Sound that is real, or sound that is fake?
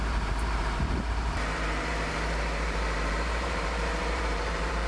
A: fake